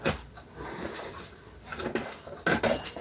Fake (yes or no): no